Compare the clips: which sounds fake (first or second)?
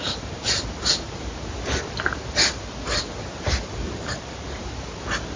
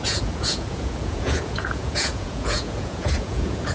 second